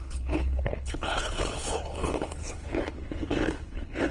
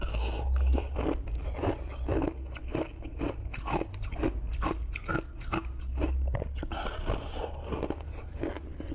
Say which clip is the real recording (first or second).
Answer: second